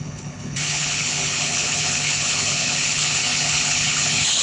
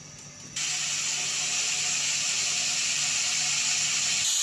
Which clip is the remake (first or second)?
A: first